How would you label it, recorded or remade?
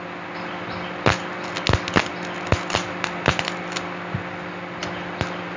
recorded